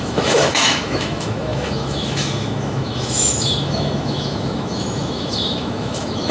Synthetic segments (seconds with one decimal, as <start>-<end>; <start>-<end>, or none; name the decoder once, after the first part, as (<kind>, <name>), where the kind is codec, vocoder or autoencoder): 0.0-6.3 (autoencoder, DAC-VAE)